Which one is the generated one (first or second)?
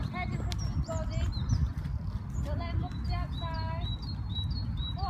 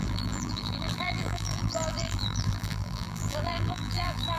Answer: second